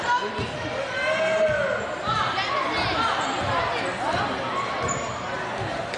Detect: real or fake real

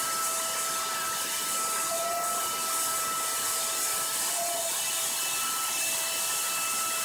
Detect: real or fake real